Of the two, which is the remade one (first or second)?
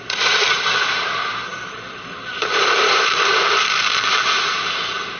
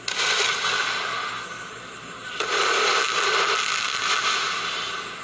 first